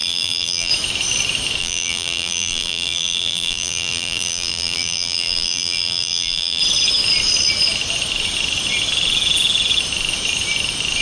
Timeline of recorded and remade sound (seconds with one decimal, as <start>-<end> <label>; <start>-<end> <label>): 0.0-0.7 remade; 0.7-1.6 recorded; 1.6-6.6 remade; 6.6-11.0 recorded